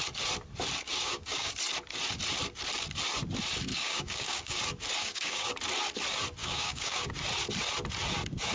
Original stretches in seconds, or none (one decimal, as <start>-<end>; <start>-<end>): 0.0-0.9; 1.5-3.7; 4.6-5.0; 5.5-6.4; 7.1-8.5